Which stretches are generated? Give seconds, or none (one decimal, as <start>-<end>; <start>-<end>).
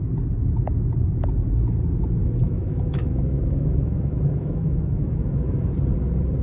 2.4-5.7